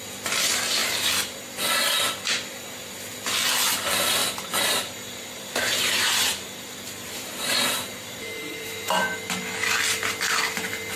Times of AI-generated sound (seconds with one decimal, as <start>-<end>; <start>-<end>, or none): 4.2-9.0